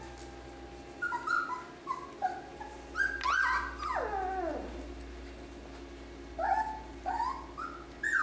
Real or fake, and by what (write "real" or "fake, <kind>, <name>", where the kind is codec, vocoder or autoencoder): real